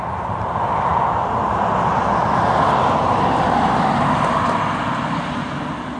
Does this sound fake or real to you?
real